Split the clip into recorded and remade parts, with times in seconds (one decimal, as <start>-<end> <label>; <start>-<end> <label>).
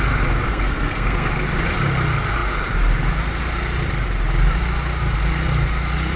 0.0-0.5 recorded; 0.5-1.3 remade; 1.3-6.2 recorded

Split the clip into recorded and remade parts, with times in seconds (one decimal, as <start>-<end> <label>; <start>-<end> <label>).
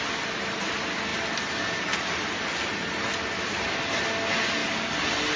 0.0-5.4 recorded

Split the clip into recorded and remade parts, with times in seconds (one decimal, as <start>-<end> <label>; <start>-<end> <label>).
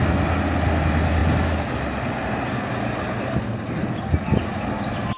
0.0-5.2 recorded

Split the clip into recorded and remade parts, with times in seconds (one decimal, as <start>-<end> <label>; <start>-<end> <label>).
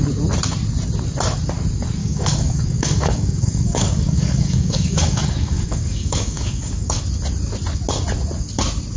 0.0-2.0 recorded; 2.0-7.0 remade; 7.0-9.0 recorded